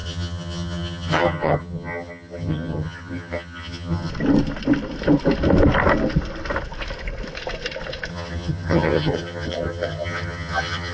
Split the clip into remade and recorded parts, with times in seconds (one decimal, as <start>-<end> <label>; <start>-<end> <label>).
0.0-4.1 remade; 4.1-8.1 recorded; 8.1-10.9 remade

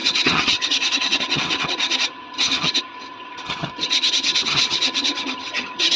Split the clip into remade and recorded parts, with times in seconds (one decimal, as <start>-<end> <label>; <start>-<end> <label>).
0.0-6.0 remade

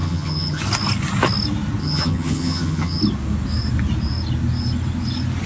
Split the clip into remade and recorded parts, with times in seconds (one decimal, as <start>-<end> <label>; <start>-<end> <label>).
0.0-0.6 remade; 0.6-1.8 recorded; 1.8-3.0 remade; 3.0-5.5 recorded